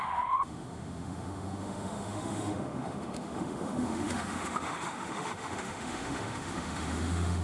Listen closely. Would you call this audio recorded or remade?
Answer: remade